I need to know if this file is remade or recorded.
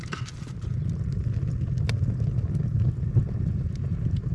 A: recorded